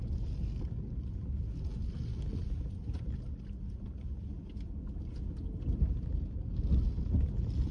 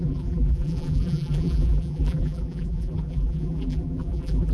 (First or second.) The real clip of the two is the first